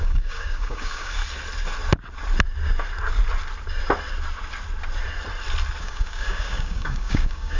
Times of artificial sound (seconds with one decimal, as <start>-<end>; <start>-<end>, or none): 0.0-1.2; 5.8-7.6